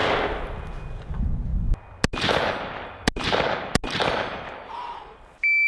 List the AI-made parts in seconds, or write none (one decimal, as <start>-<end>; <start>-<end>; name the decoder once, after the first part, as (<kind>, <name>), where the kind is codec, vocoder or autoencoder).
none